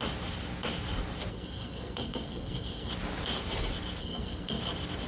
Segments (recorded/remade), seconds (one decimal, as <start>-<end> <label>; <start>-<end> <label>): 0.0-1.3 recorded; 1.3-2.9 remade; 2.9-4.0 recorded; 4.0-4.6 remade; 4.6-5.1 recorded